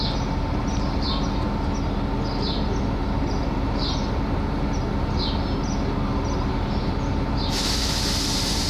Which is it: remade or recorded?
recorded